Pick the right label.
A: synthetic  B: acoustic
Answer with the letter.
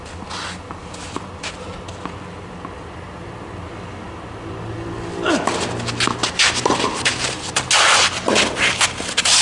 B